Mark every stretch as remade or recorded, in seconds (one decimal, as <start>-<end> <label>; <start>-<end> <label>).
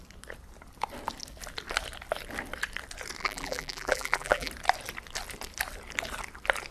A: 0.0-3.2 recorded; 3.2-4.5 remade; 4.5-6.7 recorded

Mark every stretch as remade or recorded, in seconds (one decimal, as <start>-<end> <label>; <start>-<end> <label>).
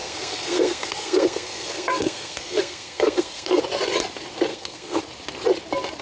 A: 0.0-3.6 remade; 3.6-4.5 recorded; 4.5-5.0 remade; 5.0-6.0 recorded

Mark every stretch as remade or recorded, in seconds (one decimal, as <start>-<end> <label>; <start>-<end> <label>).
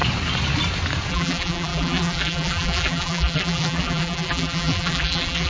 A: 0.0-1.1 recorded; 1.1-5.5 remade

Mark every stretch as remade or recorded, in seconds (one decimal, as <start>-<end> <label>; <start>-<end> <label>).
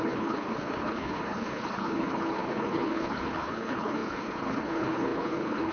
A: 0.0-5.7 remade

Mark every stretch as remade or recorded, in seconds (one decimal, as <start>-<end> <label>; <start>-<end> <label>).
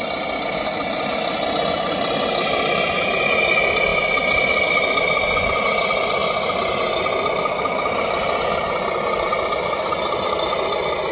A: 0.0-11.1 recorded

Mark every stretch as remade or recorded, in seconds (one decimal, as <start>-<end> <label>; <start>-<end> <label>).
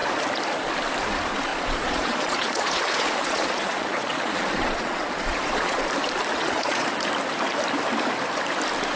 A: 0.0-1.5 recorded; 1.5-5.8 remade; 5.8-6.3 recorded; 6.3-6.9 remade; 6.9-9.0 recorded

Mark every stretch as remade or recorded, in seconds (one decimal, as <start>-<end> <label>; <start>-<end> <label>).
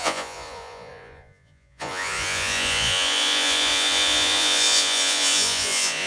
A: 0.0-6.1 remade